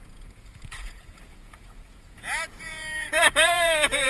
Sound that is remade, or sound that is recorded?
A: remade